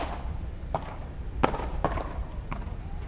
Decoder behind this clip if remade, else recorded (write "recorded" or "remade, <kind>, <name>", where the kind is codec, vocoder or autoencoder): recorded